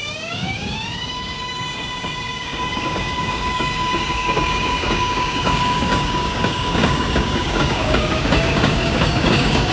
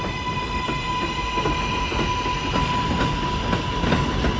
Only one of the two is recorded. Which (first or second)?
second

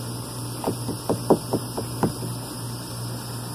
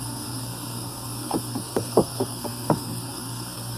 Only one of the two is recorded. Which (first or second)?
first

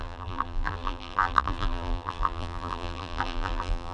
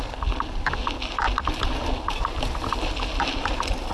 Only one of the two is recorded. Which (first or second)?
second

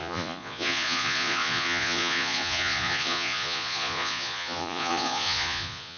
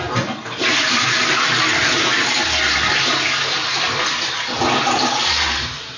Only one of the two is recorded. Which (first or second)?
second